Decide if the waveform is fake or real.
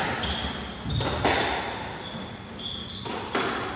real